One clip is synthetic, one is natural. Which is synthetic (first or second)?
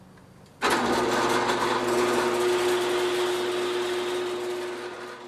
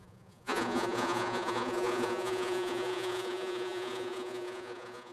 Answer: second